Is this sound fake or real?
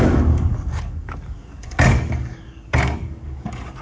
fake